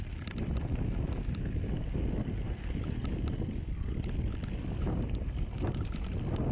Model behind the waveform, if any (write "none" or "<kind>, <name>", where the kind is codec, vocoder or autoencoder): none